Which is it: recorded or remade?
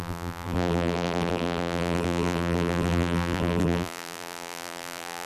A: remade